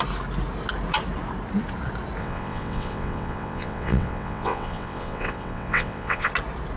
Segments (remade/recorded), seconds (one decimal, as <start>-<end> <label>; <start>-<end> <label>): 0.0-2.2 recorded; 2.2-6.3 remade; 6.3-6.8 recorded

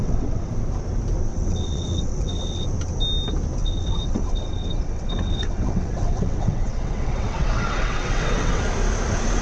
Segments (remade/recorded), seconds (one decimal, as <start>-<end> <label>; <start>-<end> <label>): 0.0-0.5 remade; 0.5-1.3 recorded; 1.3-2.7 remade; 2.7-3.6 recorded; 3.6-8.6 remade; 8.6-9.4 recorded